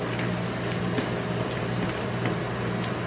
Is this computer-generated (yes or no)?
no